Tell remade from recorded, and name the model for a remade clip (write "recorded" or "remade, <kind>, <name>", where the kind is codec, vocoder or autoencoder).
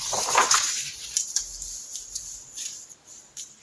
recorded